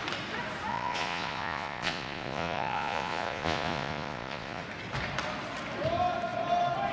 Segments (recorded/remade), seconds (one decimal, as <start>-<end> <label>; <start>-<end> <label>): 0.0-0.7 recorded; 0.7-4.6 remade; 4.6-6.9 recorded